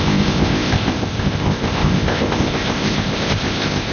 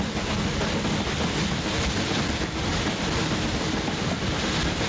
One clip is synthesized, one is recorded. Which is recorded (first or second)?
second